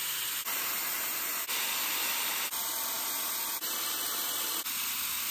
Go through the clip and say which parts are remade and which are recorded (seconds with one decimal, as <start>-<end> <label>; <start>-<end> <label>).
0.0-5.3 recorded